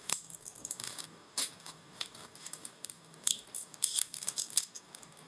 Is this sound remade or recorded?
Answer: remade